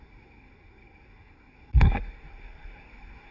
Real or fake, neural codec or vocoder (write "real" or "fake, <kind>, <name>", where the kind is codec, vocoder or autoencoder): fake, codec, SNAC